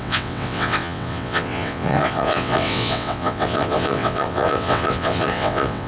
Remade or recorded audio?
remade